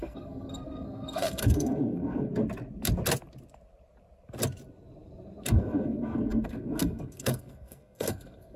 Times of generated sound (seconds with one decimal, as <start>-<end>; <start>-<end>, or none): 0.0-2.3; 5.5-8.6